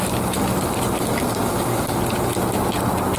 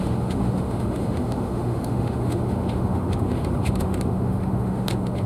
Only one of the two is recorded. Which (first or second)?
first